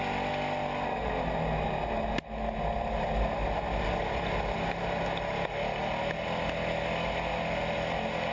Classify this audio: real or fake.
real